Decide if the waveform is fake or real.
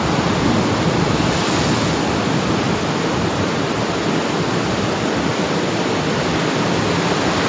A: real